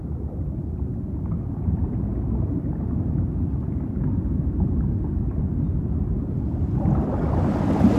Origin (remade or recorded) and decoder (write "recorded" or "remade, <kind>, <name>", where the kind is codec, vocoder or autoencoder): recorded